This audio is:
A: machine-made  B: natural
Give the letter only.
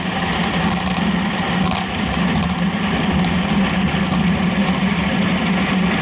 B